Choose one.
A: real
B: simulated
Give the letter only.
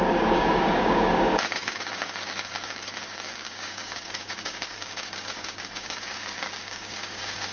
B